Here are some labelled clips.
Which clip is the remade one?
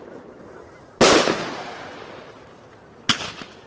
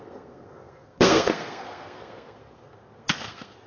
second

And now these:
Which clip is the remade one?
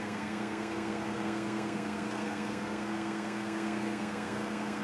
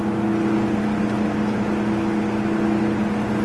first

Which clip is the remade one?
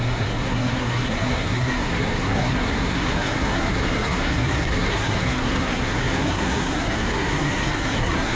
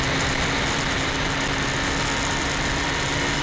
first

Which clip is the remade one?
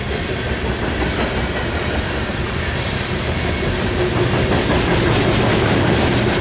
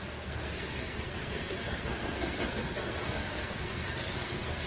second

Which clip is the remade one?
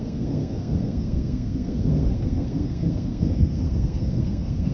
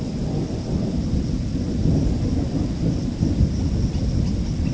first